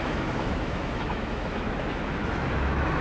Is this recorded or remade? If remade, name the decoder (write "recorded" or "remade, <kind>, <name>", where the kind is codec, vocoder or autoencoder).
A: remade, autoencoder, DAC-VAE